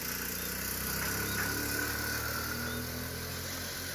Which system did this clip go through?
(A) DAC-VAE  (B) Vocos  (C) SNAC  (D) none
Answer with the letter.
D